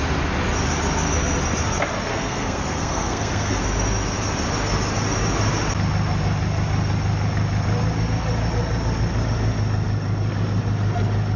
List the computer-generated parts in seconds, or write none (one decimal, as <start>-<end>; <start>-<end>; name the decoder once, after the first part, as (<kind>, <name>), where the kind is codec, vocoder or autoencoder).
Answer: 2.1-3.6 (codec, SNAC)